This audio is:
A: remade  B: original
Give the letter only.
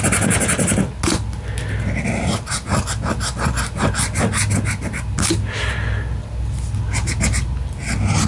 B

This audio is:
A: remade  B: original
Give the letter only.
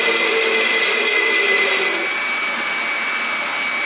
B